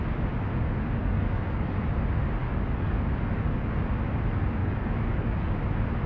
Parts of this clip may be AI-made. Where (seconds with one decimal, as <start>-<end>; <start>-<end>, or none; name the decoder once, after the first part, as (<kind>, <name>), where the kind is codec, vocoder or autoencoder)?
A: 1.0-1.8 (codec, DAC); 2.4-3.8; 4.6-5.5